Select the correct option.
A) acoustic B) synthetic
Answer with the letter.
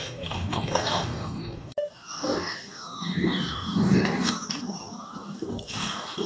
B